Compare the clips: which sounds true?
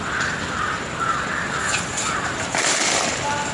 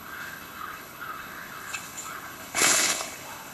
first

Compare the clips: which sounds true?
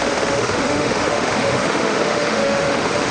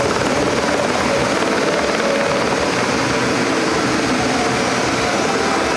second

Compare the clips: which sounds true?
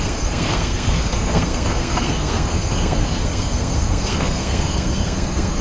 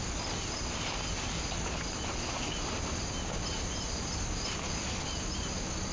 second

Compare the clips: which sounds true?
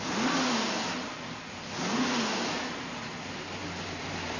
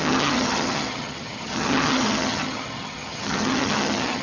first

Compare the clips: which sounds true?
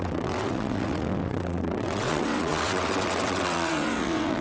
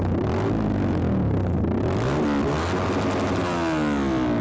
second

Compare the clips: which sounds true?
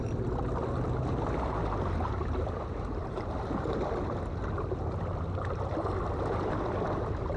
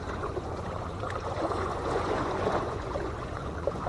first